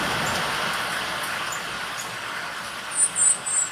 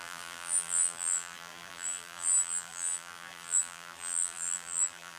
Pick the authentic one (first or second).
first